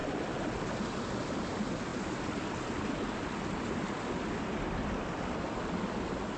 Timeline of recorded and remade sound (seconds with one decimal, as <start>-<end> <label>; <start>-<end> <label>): 0.0-6.4 recorded